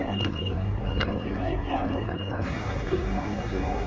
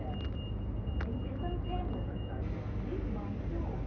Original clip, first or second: second